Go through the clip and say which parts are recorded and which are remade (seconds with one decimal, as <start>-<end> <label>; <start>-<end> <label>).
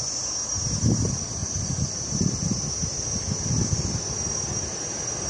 0.0-5.3 recorded